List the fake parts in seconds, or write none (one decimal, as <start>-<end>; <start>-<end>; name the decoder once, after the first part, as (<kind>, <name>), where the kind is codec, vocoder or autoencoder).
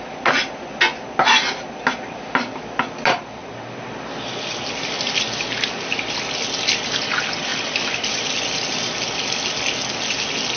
none